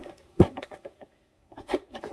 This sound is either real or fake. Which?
fake